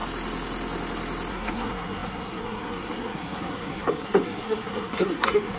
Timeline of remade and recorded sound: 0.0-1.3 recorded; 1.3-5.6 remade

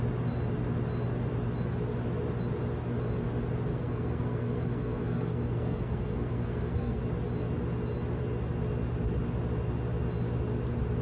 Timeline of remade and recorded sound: 0.0-3.7 recorded; 3.7-7.0 remade; 7.0-11.0 recorded

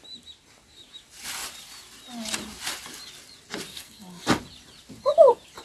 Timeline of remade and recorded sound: 0.0-3.7 recorded; 3.7-4.4 remade; 4.4-5.6 recorded

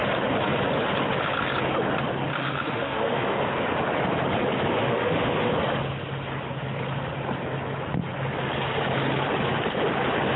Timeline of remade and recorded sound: 0.0-2.3 recorded; 2.3-3.4 remade; 3.4-4.8 recorded; 4.8-5.5 remade; 5.5-10.4 recorded

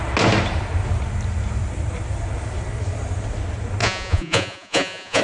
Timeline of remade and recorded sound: 0.0-3.8 recorded; 3.8-5.2 remade

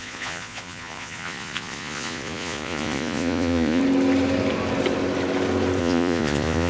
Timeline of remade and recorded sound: 0.0-3.8 remade; 3.8-5.8 recorded; 5.8-6.7 remade